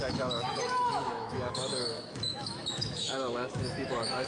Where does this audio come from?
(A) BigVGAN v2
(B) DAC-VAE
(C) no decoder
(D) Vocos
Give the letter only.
B